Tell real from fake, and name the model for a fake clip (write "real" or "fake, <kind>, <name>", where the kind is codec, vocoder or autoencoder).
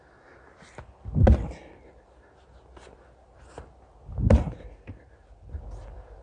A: real